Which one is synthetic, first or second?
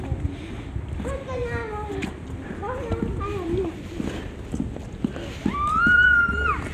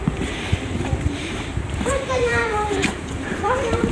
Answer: second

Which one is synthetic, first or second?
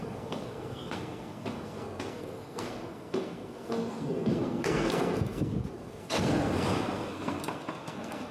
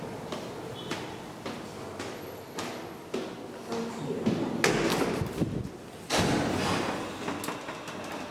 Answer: first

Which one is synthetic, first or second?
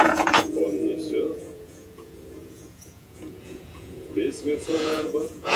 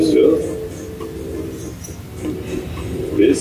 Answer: first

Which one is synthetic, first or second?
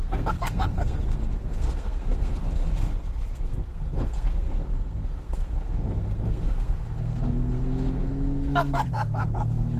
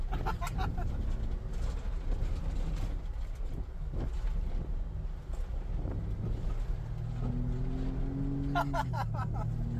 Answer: first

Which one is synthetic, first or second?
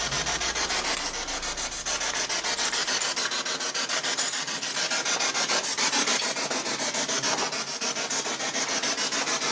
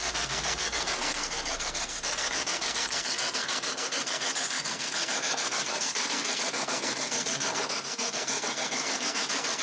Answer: second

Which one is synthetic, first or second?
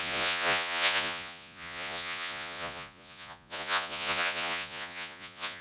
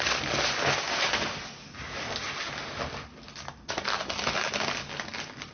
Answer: first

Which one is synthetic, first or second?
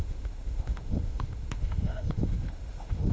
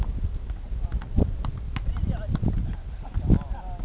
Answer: first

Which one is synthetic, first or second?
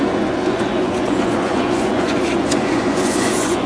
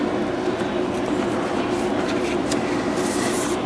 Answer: first